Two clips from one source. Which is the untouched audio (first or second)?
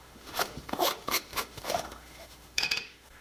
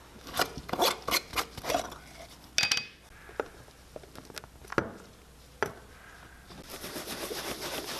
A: second